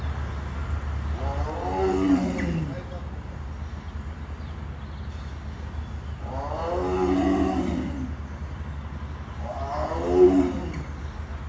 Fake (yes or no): no